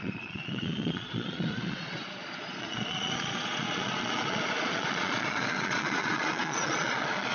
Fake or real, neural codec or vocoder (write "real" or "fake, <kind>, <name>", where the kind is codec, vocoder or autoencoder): fake, vocoder, Vocos